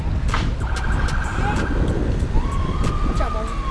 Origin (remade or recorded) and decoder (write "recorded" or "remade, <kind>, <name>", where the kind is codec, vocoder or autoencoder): recorded